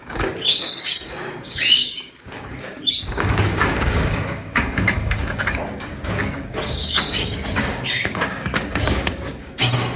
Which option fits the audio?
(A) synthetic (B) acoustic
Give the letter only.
A